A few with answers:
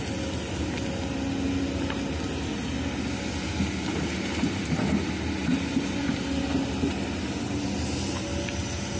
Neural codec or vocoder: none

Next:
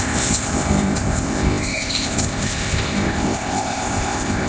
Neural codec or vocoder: codec, ZipCodec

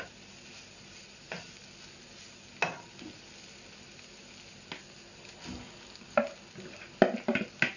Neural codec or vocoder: none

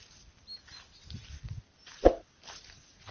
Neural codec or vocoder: none